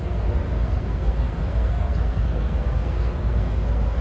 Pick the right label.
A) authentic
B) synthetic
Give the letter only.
B